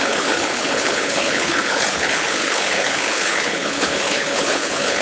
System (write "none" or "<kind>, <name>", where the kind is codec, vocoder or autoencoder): codec, HILCodec